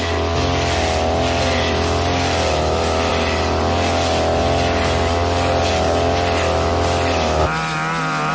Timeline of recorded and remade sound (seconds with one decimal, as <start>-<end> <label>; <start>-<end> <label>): 0.0-8.3 recorded

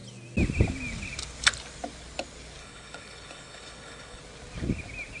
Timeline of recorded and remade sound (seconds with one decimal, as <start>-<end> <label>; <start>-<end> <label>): 0.0-2.6 recorded; 2.6-4.2 remade; 4.2-5.2 recorded

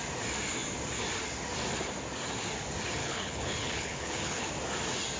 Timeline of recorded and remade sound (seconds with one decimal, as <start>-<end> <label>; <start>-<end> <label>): 0.0-3.0 recorded; 3.0-4.5 remade; 4.5-5.2 recorded

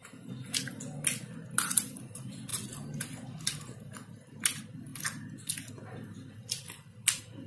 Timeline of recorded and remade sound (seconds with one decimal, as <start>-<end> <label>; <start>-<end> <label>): 0.0-7.5 recorded